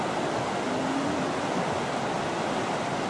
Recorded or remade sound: recorded